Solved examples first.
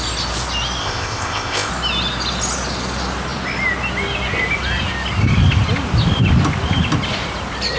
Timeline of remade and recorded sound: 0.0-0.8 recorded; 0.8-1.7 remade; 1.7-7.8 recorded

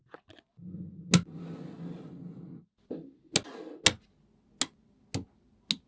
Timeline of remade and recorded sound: 0.0-5.9 recorded

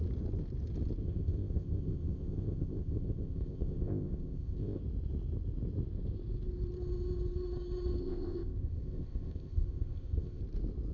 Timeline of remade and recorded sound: 0.0-1.0 recorded; 1.0-4.8 remade; 4.8-8.0 recorded; 8.0-10.4 remade; 10.4-10.9 recorded

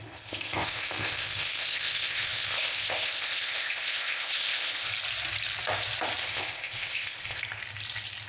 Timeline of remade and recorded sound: 0.0-4.9 remade; 4.9-6.2 recorded; 6.2-7.4 remade; 7.4-8.3 recorded

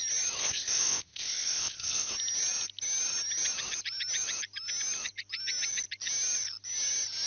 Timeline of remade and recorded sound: 0.0-0.4 recorded; 0.4-2.1 remade; 2.1-7.3 recorded